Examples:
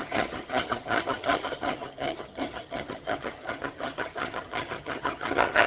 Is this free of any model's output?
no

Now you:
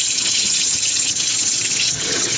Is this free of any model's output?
no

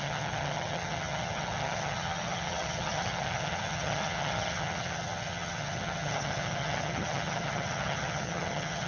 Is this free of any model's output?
no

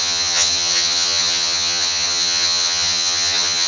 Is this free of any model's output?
no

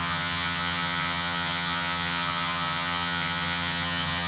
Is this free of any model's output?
no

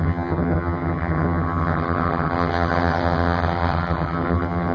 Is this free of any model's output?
no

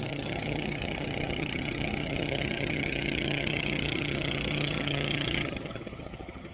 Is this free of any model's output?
no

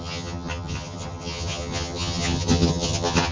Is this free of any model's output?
no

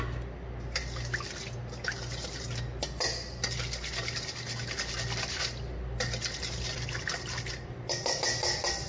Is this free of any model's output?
yes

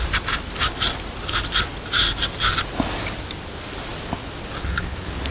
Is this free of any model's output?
yes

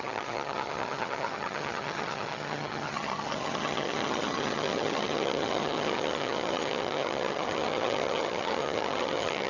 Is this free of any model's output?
no